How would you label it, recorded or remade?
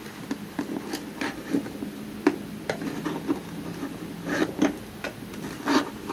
recorded